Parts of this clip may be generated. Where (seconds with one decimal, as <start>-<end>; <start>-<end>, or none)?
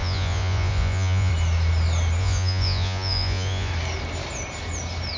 0.0-1.3; 2.2-3.7